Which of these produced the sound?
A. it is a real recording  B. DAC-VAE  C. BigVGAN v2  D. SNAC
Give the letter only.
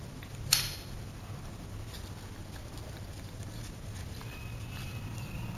A